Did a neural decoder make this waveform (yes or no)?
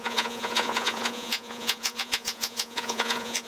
yes